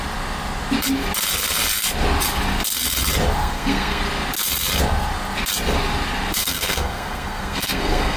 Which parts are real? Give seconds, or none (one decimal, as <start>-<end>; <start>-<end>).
0.0-3.4; 4.0-6.4